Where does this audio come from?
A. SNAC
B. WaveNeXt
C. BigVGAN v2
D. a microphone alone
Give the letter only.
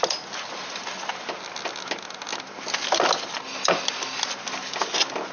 D